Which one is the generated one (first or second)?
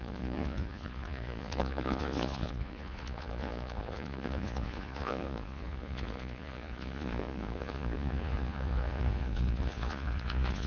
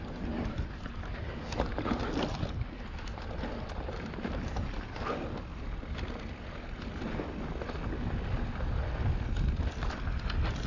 first